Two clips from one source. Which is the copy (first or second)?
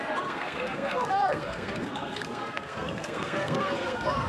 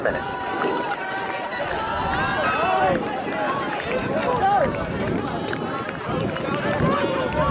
first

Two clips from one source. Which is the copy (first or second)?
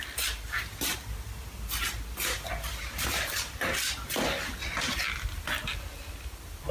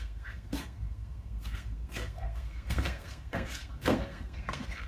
second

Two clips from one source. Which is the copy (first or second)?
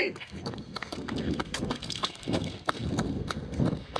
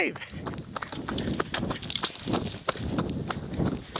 first